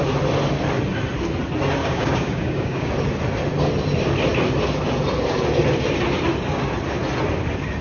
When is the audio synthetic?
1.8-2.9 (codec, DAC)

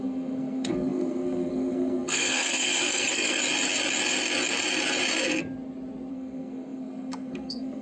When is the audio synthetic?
0.0-3.4 (codec, SNAC); 6.1-7.8

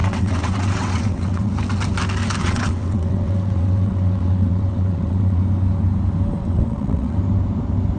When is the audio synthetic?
0.0-1.5 (vocoder, WaveNeXt); 2.4-5.4; 6.4-7.2